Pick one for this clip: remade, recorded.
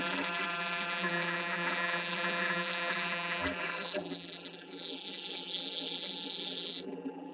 remade